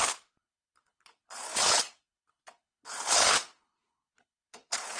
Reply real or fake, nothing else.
fake